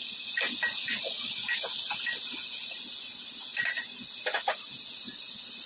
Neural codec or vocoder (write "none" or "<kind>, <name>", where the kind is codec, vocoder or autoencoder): none